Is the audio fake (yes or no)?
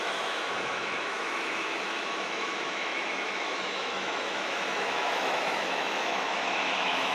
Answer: yes